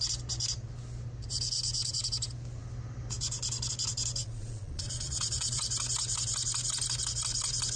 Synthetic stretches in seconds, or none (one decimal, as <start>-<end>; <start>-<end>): 4.2-5.6